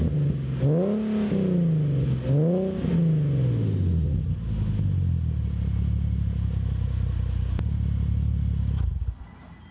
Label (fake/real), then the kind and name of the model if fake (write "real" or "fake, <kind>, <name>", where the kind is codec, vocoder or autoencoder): real